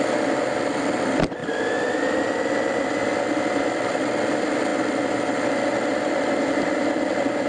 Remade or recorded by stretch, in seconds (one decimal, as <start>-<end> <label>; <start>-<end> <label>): 0.0-7.5 recorded